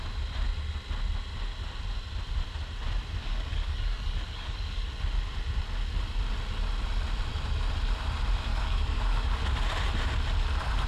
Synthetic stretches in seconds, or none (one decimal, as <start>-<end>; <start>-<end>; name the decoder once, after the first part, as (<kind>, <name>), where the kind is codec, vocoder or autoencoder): 3.2-4.9 (codec, DAC); 8.5-9.5